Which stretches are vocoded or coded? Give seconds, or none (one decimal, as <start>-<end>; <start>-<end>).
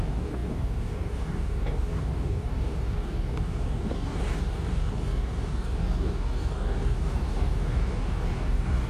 0.0-8.9